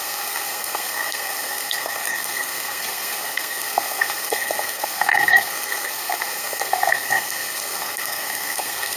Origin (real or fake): fake